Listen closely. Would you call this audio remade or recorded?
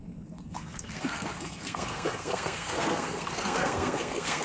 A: remade